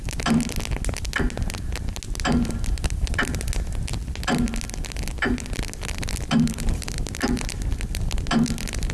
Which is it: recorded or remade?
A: recorded